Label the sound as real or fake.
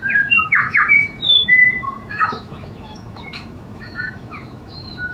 fake